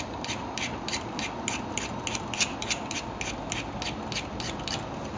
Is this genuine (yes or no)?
yes